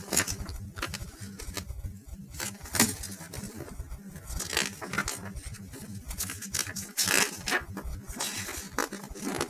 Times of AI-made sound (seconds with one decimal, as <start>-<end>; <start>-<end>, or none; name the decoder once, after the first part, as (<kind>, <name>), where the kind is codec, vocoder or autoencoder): none